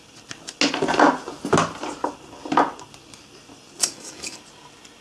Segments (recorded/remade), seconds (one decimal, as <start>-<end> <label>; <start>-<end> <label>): 0.0-3.8 recorded; 3.8-4.4 remade; 4.4-5.0 recorded